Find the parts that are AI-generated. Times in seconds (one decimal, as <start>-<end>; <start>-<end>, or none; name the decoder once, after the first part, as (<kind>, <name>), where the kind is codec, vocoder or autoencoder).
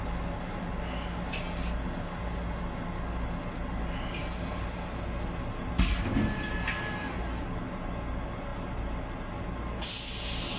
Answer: none